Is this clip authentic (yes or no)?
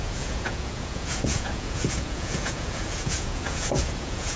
no